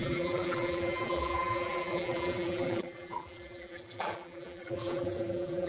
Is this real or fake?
fake